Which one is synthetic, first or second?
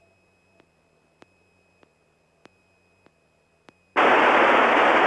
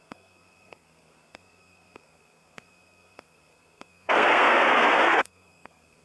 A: second